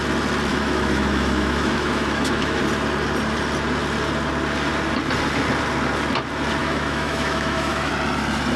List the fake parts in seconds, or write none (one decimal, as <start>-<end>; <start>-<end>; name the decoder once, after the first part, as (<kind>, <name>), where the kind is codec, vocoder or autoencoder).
0.5-2.6 (autoencoder, DAC-VAE); 6.6-7.9